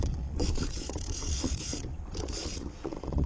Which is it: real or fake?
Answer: fake